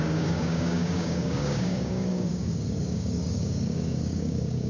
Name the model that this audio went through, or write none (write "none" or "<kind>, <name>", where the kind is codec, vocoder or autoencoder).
codec, DAC